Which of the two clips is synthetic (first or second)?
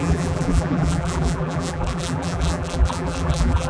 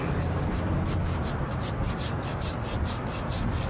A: first